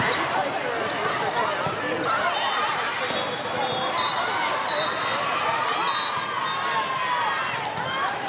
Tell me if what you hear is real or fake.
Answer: real